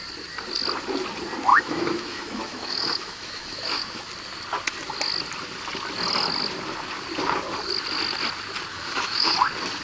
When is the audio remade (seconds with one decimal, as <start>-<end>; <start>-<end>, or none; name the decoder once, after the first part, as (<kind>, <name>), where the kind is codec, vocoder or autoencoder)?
1.5-4.1 (autoencoder, DAC-VAE); 8.7-9.3